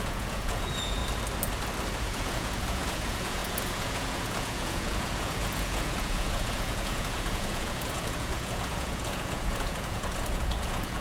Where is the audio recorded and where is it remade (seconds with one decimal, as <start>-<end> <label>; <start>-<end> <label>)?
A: 0.0-1.0 remade; 1.0-2.0 recorded; 2.0-11.0 remade